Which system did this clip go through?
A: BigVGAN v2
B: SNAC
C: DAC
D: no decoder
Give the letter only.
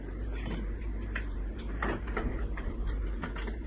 A